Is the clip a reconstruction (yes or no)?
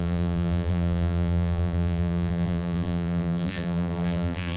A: yes